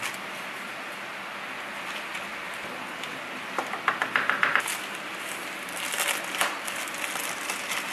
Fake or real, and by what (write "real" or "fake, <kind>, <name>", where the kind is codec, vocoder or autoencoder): real